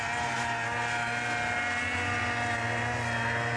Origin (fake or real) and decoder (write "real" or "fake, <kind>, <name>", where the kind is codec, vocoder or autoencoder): real